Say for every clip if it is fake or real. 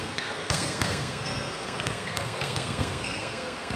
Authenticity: fake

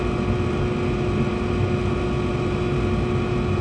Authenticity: real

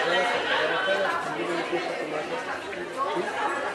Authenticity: real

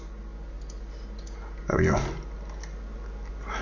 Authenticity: real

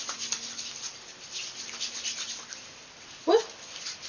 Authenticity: real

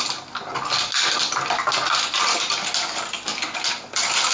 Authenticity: real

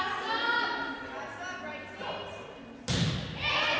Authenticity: real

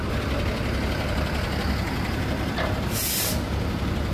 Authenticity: real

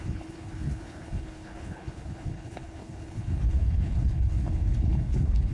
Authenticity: fake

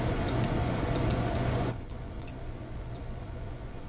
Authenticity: fake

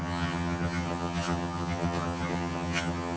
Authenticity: fake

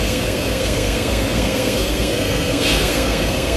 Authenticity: fake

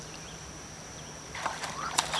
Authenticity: fake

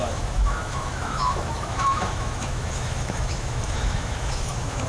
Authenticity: fake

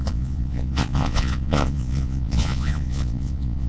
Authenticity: fake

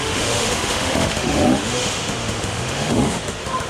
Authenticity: fake